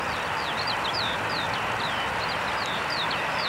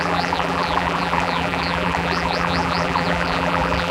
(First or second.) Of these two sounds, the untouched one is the first